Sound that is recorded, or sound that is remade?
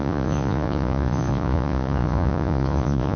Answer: remade